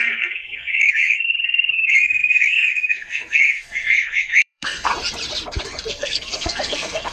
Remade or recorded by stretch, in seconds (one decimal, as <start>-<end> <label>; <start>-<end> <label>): 0.0-4.9 remade; 4.9-5.9 recorded; 5.9-7.1 remade